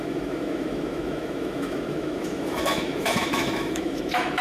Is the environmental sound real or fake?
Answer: fake